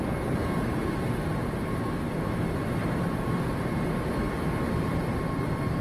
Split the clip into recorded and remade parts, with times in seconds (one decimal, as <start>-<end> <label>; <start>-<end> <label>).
0.0-2.8 recorded; 2.8-3.8 remade; 3.8-5.8 recorded